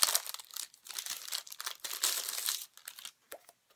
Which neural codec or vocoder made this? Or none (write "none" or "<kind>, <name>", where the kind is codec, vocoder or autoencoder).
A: none